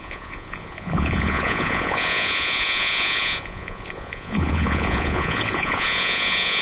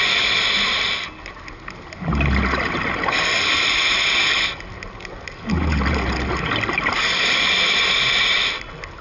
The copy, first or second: first